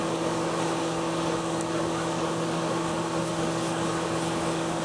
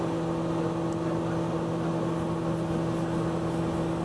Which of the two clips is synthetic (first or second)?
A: first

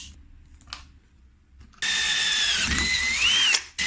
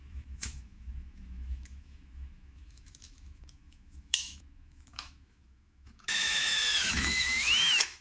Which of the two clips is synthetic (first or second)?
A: second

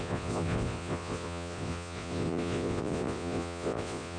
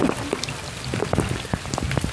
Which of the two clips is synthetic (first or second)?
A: first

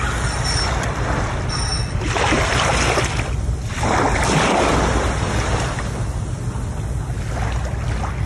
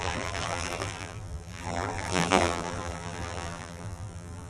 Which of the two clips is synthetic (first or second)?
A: second